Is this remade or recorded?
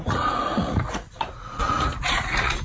remade